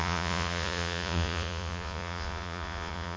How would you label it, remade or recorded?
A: remade